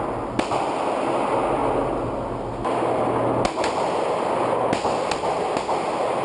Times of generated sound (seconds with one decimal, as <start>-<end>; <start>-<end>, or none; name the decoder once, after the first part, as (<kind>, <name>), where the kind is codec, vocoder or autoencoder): none